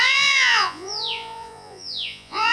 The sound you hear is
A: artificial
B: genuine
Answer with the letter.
A